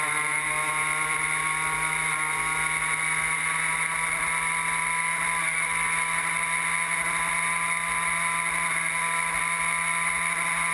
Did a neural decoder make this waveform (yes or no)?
no